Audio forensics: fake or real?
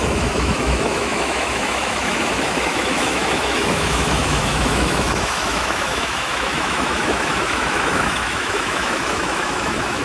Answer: fake